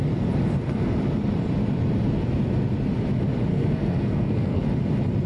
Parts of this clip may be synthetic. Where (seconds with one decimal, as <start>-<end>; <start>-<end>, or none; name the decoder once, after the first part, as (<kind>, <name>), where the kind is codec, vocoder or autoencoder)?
3.5-4.6 (codec, SNAC)